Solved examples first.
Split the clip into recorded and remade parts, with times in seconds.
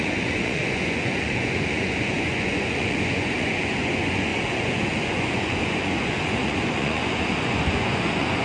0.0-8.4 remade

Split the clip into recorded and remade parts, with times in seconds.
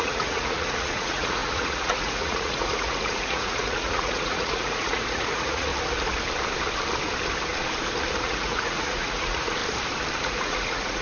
0.0-5.7 remade; 5.7-8.2 recorded; 8.2-9.6 remade; 9.6-10.2 recorded; 10.2-11.0 remade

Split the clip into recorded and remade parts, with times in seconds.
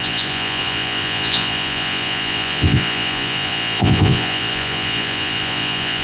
0.0-6.0 remade